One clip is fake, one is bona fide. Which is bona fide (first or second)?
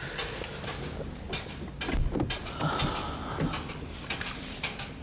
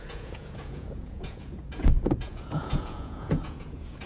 first